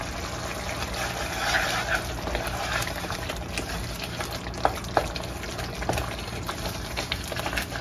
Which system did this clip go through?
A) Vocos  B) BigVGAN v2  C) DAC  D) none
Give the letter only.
D